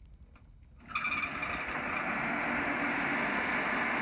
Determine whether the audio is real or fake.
real